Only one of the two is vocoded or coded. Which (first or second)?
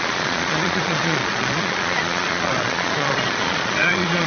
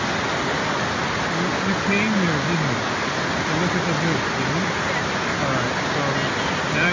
first